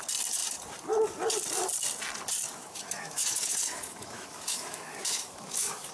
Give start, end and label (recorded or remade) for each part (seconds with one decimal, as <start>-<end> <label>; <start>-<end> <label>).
0.0-2.6 recorded; 2.6-5.9 remade